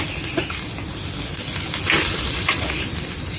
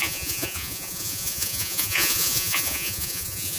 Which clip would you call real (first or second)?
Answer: first